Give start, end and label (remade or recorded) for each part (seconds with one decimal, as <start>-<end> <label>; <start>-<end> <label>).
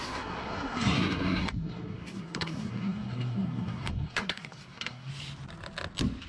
0.0-5.1 remade; 5.1-6.3 recorded